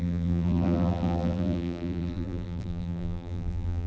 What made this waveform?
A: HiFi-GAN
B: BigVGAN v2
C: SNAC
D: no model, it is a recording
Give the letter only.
B